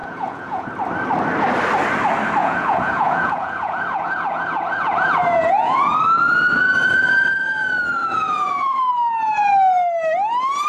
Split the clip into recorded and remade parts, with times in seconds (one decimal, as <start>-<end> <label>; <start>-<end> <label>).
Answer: 0.0-0.7 remade; 0.7-2.4 recorded; 2.4-5.8 remade; 5.8-8.0 recorded; 8.0-8.9 remade; 8.9-10.7 recorded